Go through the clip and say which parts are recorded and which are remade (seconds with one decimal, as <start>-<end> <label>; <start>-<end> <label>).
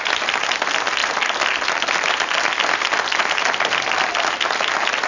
0.0-5.1 recorded